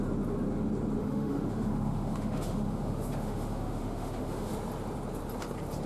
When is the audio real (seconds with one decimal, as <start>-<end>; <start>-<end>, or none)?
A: 0.0-1.0; 4.5-5.9